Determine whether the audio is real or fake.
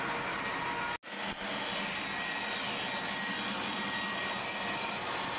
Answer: real